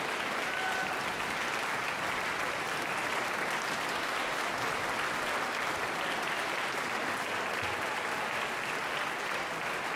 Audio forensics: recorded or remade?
recorded